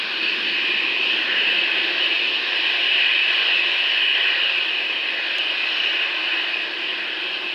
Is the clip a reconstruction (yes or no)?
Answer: no